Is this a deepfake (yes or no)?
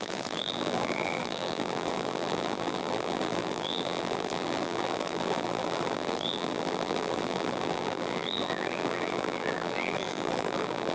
yes